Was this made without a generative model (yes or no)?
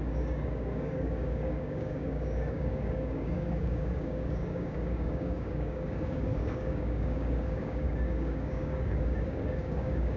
no